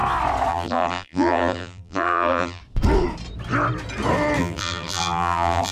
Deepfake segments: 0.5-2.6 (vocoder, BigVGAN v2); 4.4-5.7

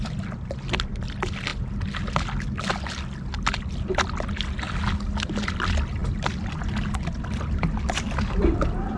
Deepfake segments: none

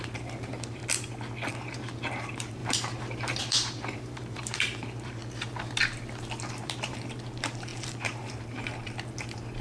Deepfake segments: 0.0-0.8 (vocoder, BigVGAN v2); 1.5-5.2; 6.5-9.6

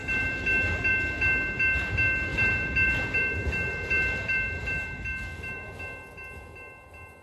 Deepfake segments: 0.0-0.9 (vocoder, BigVGAN v2); 2.3-5.7

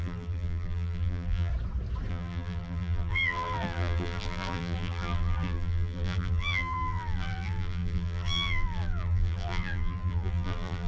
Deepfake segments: 0.0-1.5 (vocoder, BigVGAN v2); 2.1-10.9

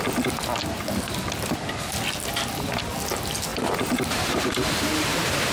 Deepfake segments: 3.5-5.5 (vocoder, BigVGAN v2)

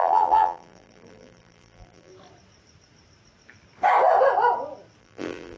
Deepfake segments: 0.0-2.1 (vocoder, BigVGAN v2); 5.0-5.6